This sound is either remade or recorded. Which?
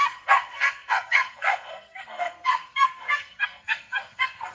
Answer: remade